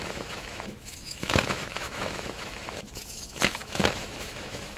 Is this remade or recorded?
remade